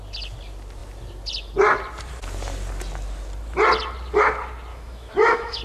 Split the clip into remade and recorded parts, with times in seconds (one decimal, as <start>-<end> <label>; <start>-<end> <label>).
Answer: 0.0-4.7 recorded; 4.7-5.6 remade